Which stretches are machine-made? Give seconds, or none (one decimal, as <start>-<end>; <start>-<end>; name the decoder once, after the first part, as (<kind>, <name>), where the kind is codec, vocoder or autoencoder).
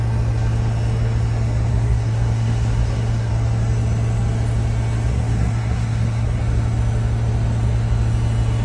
1.7-3.3 (codec, SNAC); 5.1-6.4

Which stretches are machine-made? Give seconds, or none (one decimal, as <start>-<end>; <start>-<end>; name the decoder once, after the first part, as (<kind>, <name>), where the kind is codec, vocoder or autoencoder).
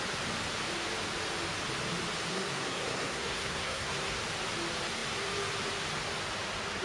2.3-4.2 (codec, SNAC)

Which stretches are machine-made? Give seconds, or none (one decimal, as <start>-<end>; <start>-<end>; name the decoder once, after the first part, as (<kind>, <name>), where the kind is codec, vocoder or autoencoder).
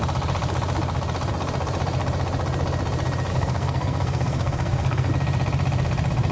3.3-5.1 (codec, SNAC)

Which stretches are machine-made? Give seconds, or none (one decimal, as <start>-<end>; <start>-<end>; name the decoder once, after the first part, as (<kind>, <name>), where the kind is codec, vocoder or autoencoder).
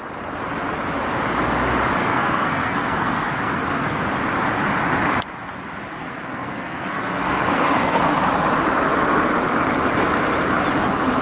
2.0-4.0 (codec, SNAC); 6.0-8.0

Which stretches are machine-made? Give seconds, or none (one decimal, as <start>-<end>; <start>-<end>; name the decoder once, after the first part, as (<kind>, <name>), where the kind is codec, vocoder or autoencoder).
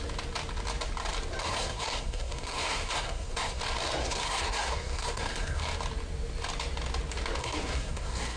1.4-3.6 (codec, SNAC); 4.0-5.6; 7.4-8.4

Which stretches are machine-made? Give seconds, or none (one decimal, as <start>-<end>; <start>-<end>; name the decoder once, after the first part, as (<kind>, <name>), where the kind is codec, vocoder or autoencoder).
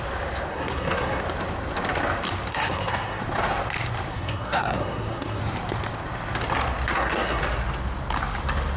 0.5-1.2 (codec, SNAC); 2.5-3.2; 4.1-5.4; 6.9-7.4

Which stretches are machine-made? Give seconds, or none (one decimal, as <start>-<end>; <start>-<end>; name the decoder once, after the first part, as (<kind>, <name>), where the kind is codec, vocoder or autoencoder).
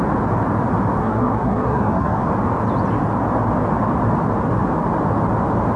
1.0-2.3 (codec, SNAC)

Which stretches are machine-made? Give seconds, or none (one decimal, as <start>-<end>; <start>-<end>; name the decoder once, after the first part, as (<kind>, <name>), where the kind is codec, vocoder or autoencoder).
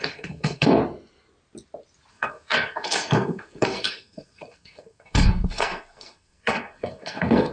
0.0-0.8 (codec, SNAC); 2.1-7.5